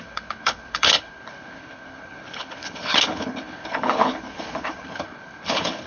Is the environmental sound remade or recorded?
remade